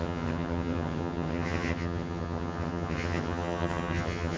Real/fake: fake